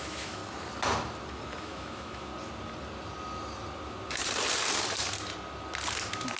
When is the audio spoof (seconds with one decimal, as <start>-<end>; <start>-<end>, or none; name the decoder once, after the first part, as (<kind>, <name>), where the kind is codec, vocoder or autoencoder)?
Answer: 0.0-0.4 (autoencoder, DAC-VAE); 1.6-2.3